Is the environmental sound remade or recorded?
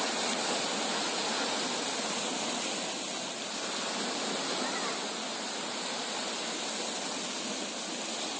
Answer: recorded